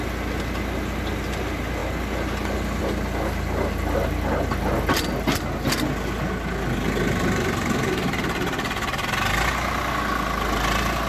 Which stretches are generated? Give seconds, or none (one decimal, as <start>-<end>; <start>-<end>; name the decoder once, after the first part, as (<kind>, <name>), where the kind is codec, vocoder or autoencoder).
none